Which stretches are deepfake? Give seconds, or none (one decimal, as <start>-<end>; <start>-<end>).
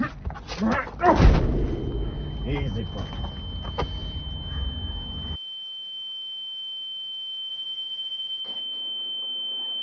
7.5-8.6